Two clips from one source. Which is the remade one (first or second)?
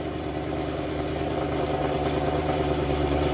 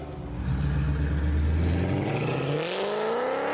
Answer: first